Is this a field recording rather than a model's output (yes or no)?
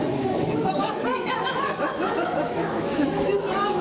no